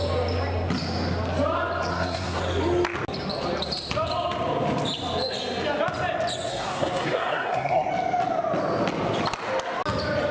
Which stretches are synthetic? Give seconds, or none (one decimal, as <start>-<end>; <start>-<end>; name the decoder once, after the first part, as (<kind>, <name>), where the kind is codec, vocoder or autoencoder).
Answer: 1.9-2.4 (codec, SNAC); 6.5-7.9